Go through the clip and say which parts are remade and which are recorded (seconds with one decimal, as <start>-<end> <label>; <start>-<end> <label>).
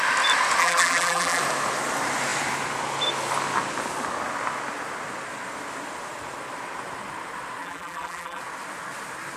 0.0-0.6 recorded; 0.6-1.4 remade; 1.4-7.6 recorded; 7.6-8.4 remade; 8.4-9.4 recorded